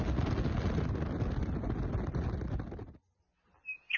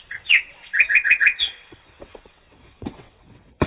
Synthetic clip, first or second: second